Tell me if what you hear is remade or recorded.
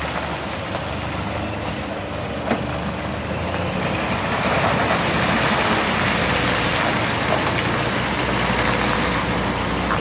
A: recorded